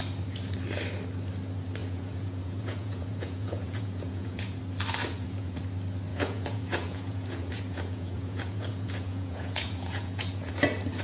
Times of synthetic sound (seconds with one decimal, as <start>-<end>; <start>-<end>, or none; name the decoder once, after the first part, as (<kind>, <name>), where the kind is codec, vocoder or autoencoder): 1.8-4.6 (vocoder, Vocos); 5.0-5.6; 6.1-10.5